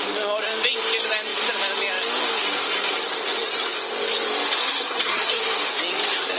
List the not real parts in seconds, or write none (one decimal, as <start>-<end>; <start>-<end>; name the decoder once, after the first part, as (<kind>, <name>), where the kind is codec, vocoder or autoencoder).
4.6-5.4 (codec, SNAC)

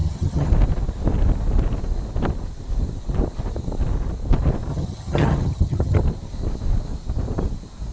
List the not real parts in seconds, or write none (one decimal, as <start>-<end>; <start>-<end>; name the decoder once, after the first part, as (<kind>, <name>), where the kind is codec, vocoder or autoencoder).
0.0-0.5 (vocoder, HiFi-GAN); 4.7-6.0